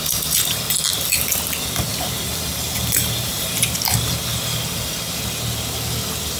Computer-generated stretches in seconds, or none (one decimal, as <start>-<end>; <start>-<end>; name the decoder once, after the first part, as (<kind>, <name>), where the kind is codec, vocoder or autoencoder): 1.9-4.1 (vocoder, BigVGAN v2)